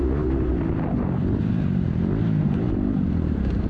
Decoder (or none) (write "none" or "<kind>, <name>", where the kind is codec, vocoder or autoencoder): vocoder, BigVGAN v2